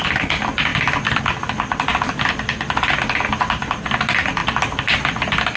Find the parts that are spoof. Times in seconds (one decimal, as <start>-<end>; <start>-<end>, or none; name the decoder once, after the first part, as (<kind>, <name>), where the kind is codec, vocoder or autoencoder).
none